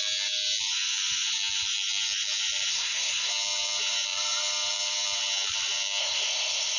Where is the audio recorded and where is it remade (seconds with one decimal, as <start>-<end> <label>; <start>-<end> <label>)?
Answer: 0.0-2.7 recorded; 2.7-3.3 remade; 3.3-6.0 recorded; 6.0-6.8 remade

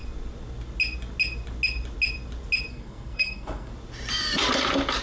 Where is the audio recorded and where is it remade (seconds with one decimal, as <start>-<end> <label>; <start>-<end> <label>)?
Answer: 0.0-2.7 recorded; 2.7-3.7 remade; 3.7-5.0 recorded

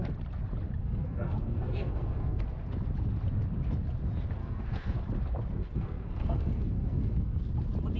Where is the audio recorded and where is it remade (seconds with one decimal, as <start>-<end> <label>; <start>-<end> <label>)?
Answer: 0.0-0.8 recorded; 0.8-2.4 remade; 2.4-4.4 recorded; 4.4-5.0 remade; 5.0-5.6 recorded; 5.6-7.5 remade; 7.5-8.0 recorded

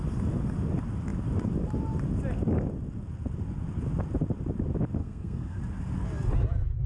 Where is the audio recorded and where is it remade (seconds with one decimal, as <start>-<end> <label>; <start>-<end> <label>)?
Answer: 0.0-5.0 recorded; 5.0-5.6 remade; 5.6-6.9 recorded

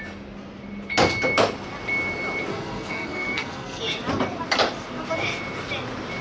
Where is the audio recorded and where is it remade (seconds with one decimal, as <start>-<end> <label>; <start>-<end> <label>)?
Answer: 0.0-2.5 recorded; 2.5-3.8 remade; 3.8-6.2 recorded

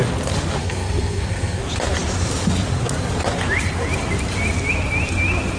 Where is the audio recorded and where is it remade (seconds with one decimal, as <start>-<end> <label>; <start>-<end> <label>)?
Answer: 0.0-0.6 recorded; 0.6-1.6 remade; 1.6-5.6 recorded

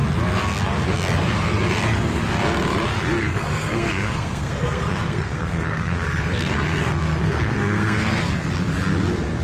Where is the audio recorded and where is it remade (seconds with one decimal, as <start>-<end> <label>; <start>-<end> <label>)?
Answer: 0.0-3.2 recorded; 3.2-8.2 remade; 8.2-9.4 recorded